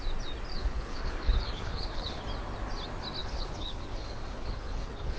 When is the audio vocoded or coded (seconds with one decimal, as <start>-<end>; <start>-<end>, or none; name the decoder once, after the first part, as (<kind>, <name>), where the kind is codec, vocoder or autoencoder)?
0.5-2.2 (codec, HILCodec); 3.2-5.2